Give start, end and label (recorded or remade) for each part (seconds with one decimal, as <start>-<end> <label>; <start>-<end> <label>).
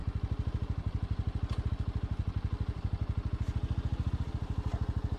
0.0-5.2 recorded